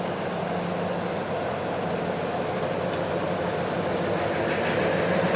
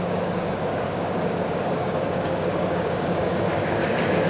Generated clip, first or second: second